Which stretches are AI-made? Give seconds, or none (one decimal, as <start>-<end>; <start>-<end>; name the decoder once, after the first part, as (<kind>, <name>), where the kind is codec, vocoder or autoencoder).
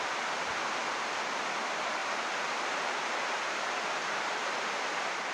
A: 2.0-4.8 (vocoder, BigVGAN v2)